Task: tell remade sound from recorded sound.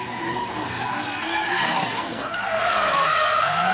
remade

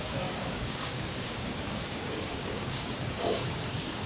remade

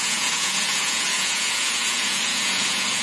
remade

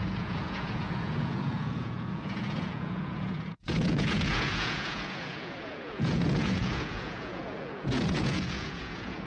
remade